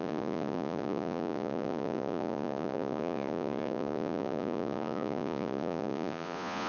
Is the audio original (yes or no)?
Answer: no